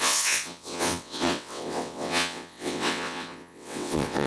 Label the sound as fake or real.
fake